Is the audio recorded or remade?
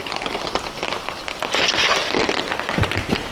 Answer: remade